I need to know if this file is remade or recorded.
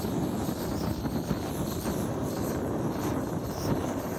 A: recorded